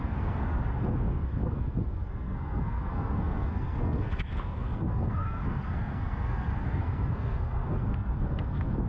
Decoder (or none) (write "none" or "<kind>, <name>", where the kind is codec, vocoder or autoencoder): codec, SNAC